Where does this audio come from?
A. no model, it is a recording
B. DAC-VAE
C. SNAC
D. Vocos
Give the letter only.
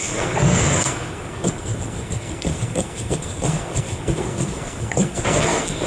C